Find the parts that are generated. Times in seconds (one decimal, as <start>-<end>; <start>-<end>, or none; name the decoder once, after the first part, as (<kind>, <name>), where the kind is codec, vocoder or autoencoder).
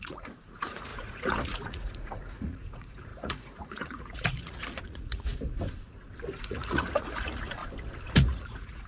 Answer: 0.0-5.3 (vocoder, Vocos); 6.3-7.6; 8.1-8.9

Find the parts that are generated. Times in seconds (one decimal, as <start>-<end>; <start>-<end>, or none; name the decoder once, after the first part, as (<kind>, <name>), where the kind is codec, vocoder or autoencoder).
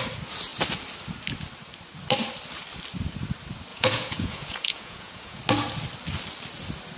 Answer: 3.7-5.4 (vocoder, Vocos)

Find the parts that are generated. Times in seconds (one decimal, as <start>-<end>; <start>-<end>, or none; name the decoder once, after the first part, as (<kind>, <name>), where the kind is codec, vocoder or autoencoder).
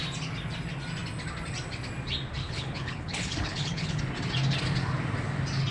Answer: 2.4-4.0 (codec, HILCodec)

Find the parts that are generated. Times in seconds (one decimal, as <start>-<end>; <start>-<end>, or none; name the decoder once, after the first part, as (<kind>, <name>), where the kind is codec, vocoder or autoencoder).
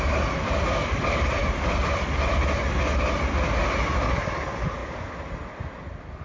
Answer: none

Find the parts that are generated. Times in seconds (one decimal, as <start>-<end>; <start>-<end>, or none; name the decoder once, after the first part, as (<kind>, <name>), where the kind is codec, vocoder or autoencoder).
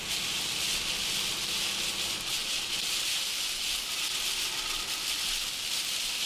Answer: none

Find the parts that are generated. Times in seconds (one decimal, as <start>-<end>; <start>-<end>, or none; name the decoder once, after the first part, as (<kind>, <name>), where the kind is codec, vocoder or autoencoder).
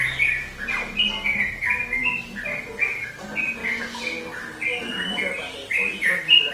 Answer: 5.6-6.5 (vocoder, BigVGAN v2)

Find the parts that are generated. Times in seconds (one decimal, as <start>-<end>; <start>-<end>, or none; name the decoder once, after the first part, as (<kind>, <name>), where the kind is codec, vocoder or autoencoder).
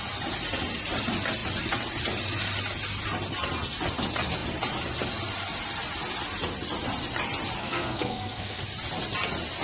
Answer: 7.6-8.6 (codec, SNAC)